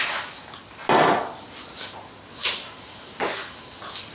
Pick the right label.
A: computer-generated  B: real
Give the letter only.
B